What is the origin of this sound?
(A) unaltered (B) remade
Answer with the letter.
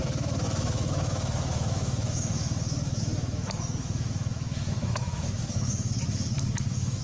B